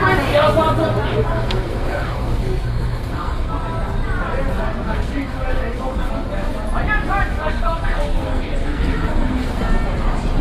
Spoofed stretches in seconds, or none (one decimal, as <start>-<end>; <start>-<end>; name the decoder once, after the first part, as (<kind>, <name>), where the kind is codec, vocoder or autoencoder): 1.1-3.5 (codec, SNAC); 4.5-6.1; 7.3-9.6